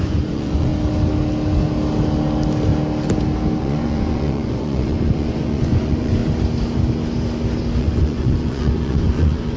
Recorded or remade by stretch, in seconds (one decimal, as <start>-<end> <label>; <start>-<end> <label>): 0.0-0.7 remade; 0.7-3.6 recorded; 3.6-6.2 remade; 6.2-7.8 recorded; 7.8-9.6 remade